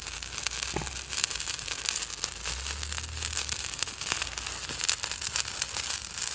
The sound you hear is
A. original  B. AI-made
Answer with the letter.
A